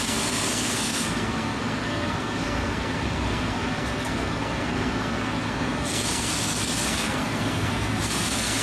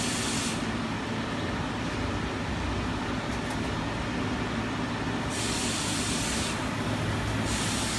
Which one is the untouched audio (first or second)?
second